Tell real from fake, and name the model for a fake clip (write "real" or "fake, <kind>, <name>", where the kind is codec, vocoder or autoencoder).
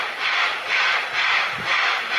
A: real